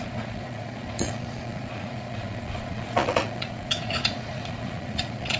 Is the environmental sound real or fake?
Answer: fake